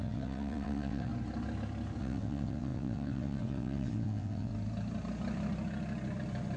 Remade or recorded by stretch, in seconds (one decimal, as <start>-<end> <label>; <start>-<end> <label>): 0.0-1.1 remade; 1.1-2.0 recorded; 2.0-4.5 remade; 4.5-6.6 recorded